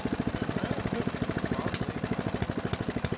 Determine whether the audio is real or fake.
real